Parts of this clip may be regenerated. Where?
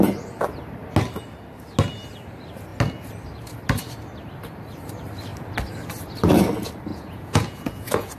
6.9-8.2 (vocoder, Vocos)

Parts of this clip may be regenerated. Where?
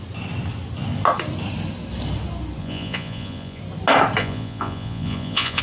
2.6-3.6 (vocoder, Vocos); 4.2-5.6